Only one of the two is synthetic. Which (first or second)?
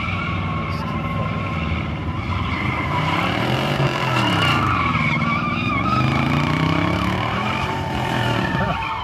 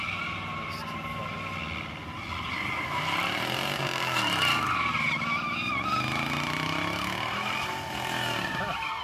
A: first